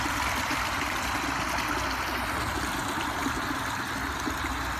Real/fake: real